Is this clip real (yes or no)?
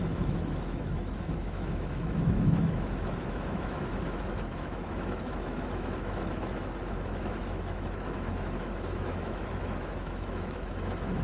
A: no